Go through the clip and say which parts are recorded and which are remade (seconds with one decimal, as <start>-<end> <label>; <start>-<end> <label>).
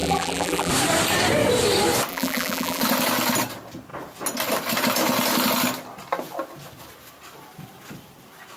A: 0.0-0.7 remade; 0.7-2.1 recorded; 2.1-2.8 remade; 2.8-8.6 recorded